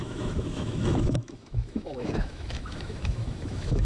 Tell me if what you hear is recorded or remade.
remade